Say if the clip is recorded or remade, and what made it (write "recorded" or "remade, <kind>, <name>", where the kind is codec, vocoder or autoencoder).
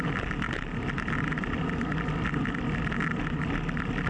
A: recorded